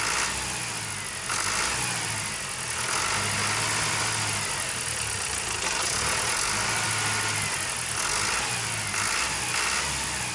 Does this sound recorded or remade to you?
recorded